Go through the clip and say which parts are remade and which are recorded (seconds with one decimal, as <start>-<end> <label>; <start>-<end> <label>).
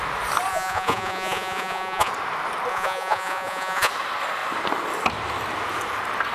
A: 0.0-0.5 recorded; 0.5-2.1 remade; 2.1-2.7 recorded; 2.7-3.9 remade; 3.9-6.3 recorded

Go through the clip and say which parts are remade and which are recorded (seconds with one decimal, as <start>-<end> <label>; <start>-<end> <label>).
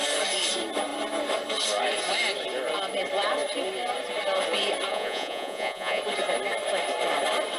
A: 0.0-4.9 recorded; 4.9-6.0 remade; 6.0-7.6 recorded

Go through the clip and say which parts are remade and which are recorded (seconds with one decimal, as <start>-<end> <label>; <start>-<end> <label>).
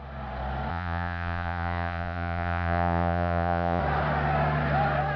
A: 0.0-0.7 recorded; 0.7-3.8 remade; 3.8-5.2 recorded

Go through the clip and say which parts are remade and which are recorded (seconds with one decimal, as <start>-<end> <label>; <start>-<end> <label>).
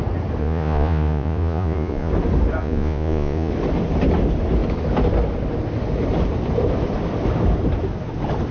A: 0.0-0.4 recorded; 0.4-2.1 remade; 2.1-2.6 recorded; 2.6-3.5 remade; 3.5-8.5 recorded